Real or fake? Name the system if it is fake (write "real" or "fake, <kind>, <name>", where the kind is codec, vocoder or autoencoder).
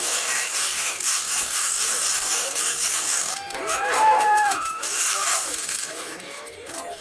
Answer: fake, codec, DAC